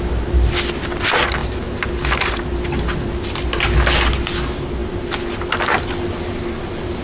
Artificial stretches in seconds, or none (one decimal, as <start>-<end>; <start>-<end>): none